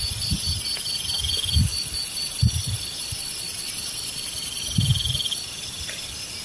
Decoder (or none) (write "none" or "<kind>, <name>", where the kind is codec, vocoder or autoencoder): none